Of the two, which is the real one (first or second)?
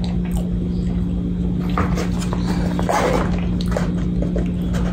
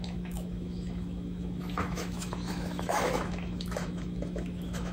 first